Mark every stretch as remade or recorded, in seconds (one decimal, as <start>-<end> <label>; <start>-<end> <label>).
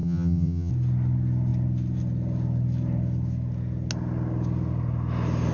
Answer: 0.0-0.7 remade; 0.7-5.5 recorded